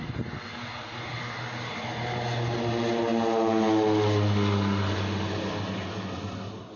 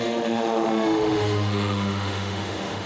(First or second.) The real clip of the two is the first